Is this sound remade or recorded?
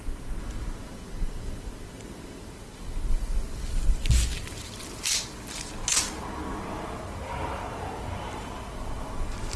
recorded